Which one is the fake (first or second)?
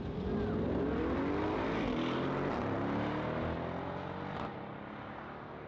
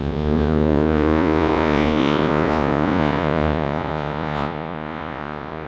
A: second